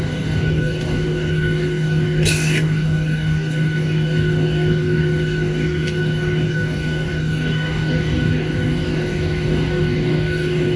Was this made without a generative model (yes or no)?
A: no